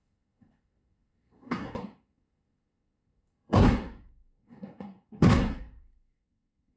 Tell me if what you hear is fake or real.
fake